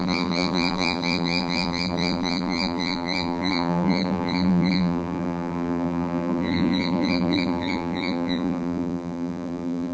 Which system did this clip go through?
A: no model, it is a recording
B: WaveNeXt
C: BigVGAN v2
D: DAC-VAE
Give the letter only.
C